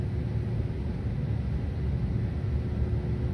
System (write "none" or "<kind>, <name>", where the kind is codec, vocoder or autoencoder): none